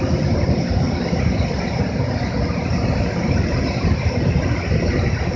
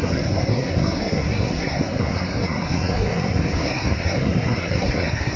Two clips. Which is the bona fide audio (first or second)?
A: first